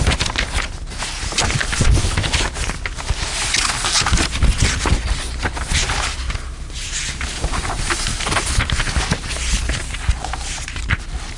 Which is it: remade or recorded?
recorded